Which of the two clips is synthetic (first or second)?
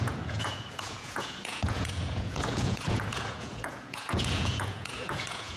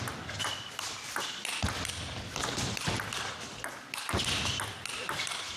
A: first